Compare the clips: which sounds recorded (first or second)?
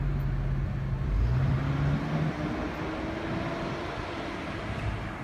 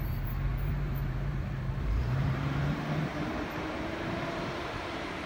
first